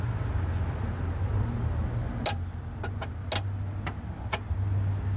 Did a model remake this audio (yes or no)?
no